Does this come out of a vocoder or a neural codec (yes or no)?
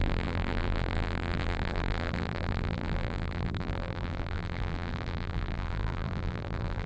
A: yes